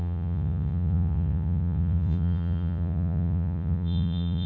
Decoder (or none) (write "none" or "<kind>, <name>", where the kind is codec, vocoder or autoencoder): vocoder, Vocos